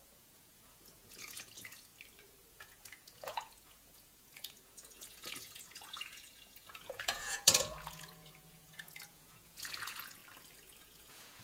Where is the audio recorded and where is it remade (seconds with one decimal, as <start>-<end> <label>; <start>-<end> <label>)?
0.0-1.9 remade; 1.9-2.5 recorded; 2.5-10.2 remade; 10.2-10.8 recorded; 10.8-11.4 remade